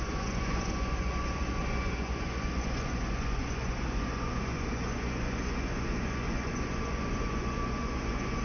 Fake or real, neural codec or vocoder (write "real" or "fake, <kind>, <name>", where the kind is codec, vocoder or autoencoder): fake, vocoder, Vocos